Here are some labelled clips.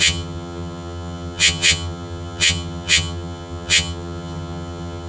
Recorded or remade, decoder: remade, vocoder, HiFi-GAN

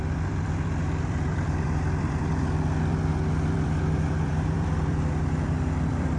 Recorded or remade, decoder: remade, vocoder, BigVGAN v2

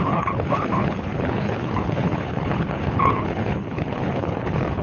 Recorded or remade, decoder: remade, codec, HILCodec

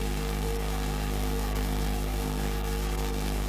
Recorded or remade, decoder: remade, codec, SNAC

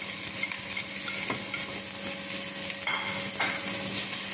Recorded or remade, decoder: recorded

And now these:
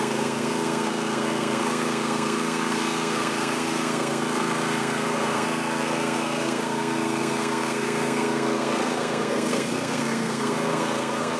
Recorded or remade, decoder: remade, codec, SNAC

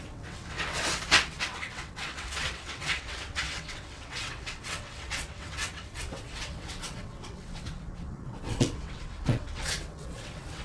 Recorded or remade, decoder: remade, vocoder, WaveNeXt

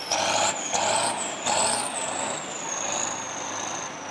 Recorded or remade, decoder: recorded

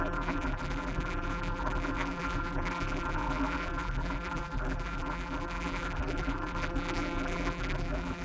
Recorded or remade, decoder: remade, vocoder, BigVGAN v2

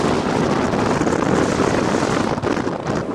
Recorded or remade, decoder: recorded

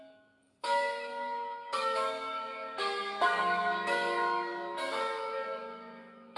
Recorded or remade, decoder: remade, codec, DAC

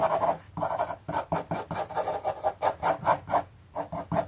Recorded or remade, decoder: recorded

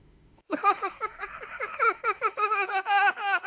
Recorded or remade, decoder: remade, autoencoder, DAC-VAE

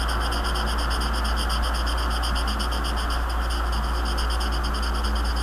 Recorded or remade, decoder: recorded